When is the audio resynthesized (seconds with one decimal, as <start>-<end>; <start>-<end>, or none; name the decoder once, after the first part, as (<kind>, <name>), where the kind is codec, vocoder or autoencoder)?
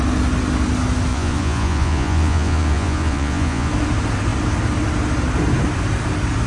1.1-3.7 (vocoder, Vocos)